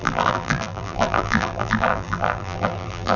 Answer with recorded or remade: remade